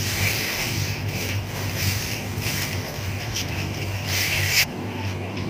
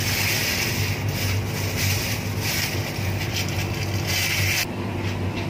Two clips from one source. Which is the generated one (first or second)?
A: first